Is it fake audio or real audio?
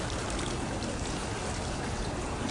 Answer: fake